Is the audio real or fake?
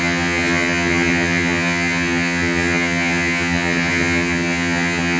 fake